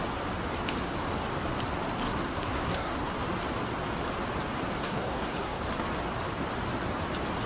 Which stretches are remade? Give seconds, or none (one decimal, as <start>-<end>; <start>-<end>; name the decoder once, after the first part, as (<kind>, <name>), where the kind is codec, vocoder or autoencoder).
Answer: 2.0-3.1 (codec, SNAC); 4.8-5.6